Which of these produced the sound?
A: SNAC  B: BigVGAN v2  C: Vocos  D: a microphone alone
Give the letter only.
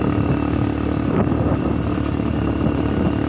D